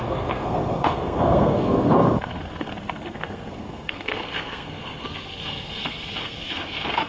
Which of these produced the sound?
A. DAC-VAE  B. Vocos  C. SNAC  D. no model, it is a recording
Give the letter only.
C